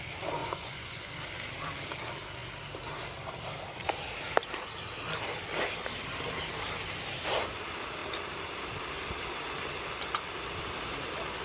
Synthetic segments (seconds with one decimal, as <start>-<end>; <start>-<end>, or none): 0.4-1.1